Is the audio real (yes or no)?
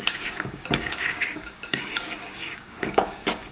no